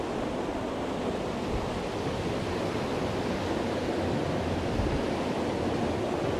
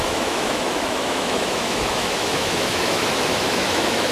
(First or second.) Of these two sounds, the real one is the first